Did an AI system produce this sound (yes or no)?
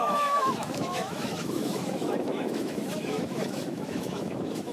yes